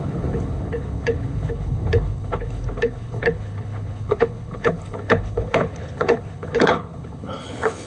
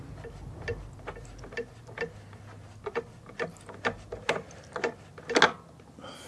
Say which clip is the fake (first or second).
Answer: first